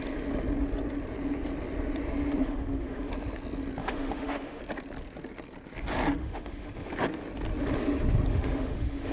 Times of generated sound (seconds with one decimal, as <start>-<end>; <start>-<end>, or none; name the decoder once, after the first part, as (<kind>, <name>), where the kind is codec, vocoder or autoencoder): 2.4-3.1 (autoencoder, DAC-VAE); 3.8-4.6; 6.2-6.9; 8.3-9.1